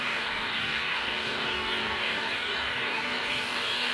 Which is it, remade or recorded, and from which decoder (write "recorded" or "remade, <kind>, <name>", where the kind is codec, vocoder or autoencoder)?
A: remade, codec, DAC